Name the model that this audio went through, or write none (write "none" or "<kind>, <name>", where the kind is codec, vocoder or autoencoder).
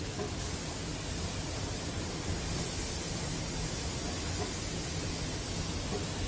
none